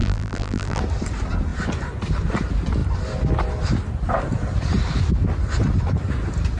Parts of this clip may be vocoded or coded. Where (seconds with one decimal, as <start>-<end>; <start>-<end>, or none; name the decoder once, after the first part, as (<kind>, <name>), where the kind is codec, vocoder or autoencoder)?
0.0-0.8 (vocoder, BigVGAN v2)